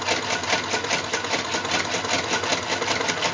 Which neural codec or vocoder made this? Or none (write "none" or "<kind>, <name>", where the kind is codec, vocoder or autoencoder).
none